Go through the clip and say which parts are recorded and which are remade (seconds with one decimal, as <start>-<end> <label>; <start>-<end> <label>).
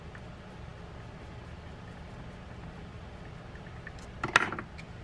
0.0-5.0 recorded